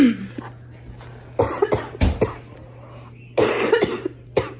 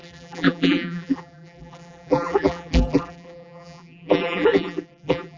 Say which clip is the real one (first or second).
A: first